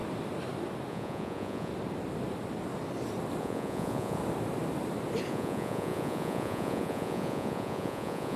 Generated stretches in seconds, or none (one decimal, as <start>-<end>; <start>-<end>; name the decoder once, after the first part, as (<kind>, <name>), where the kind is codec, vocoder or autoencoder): 0.9-1.7 (vocoder, Vocos); 3.4-4.2; 5.3-8.4